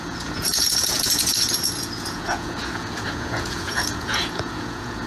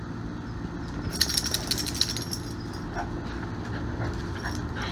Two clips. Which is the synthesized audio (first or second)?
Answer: first